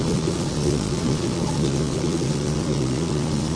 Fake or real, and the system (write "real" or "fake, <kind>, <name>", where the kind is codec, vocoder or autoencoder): fake, vocoder, Vocos